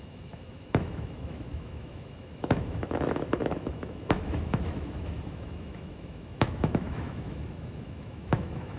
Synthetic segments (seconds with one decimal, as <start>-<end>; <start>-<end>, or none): 0.0-8.8

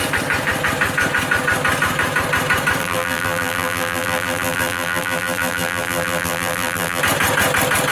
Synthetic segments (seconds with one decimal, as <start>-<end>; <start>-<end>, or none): 2.8-7.0

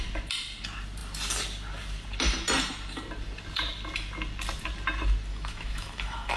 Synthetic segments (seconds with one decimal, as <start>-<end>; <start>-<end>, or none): 5.3-6.4

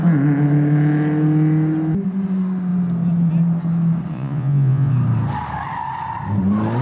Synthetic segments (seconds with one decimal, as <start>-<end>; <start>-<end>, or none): 4.1-4.9

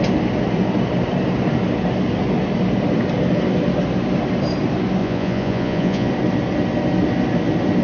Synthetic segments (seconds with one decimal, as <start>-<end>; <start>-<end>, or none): 5.0-6.1